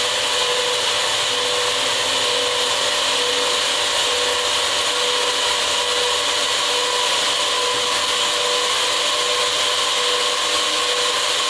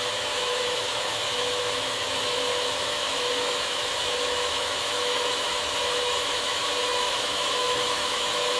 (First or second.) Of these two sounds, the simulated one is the second